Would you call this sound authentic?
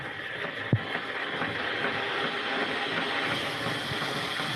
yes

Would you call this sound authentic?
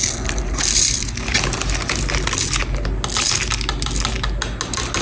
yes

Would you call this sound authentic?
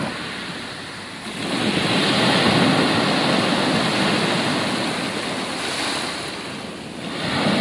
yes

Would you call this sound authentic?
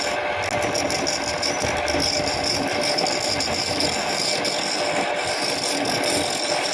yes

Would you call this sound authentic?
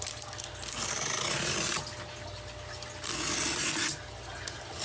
yes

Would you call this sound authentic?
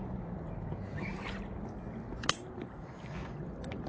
yes